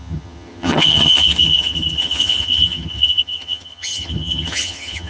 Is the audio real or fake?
fake